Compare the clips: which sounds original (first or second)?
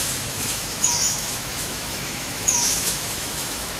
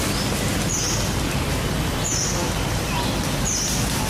second